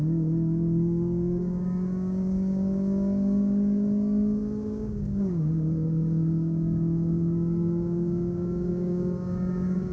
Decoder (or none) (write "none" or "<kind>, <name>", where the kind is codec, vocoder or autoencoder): codec, DAC